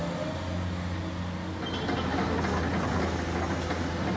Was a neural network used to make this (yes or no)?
no